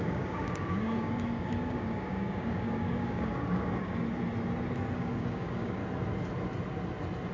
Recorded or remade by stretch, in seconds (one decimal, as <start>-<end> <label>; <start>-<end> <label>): 0.0-4.0 remade; 4.0-5.0 recorded; 5.0-5.8 remade; 5.8-7.3 recorded